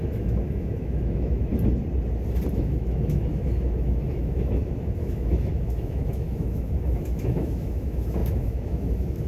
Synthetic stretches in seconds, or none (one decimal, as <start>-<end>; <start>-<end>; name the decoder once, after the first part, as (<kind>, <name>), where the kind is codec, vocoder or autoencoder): 0.0-1.5 (autoencoder, DAC-VAE); 2.5-9.3